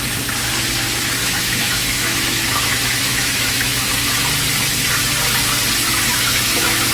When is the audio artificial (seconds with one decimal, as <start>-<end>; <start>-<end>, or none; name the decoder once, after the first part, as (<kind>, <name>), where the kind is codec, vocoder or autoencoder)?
1.2-3.9 (autoencoder, DAC-VAE); 6.1-6.9